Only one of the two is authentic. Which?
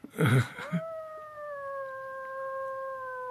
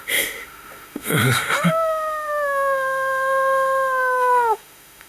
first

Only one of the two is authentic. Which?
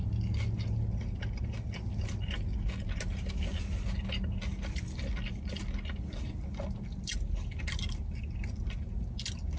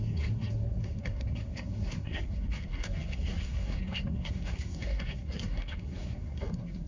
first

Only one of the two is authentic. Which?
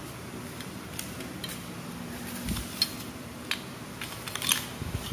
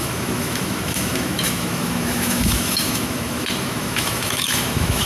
first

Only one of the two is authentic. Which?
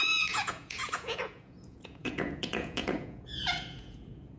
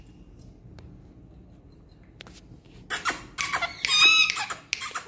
second